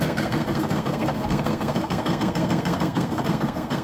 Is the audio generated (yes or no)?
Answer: yes